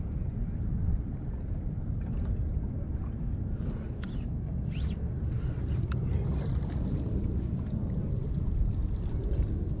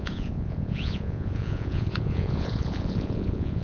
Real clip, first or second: first